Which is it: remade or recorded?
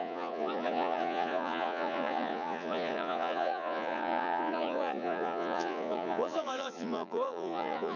remade